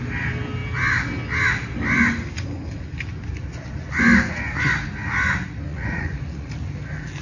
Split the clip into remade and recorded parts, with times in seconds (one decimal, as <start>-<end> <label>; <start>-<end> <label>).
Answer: 0.0-5.7 recorded; 5.7-6.5 remade; 6.5-7.2 recorded